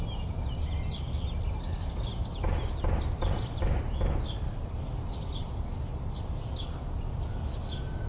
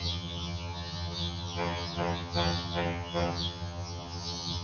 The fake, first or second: second